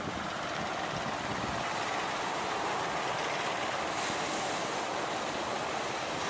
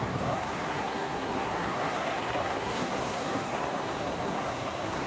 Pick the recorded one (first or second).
first